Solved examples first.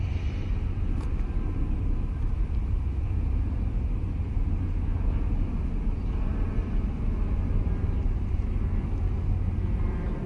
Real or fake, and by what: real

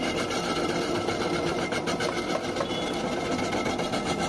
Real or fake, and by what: real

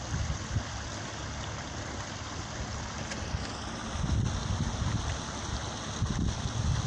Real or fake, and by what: real